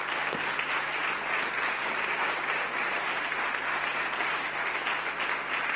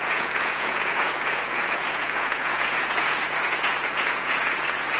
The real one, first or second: first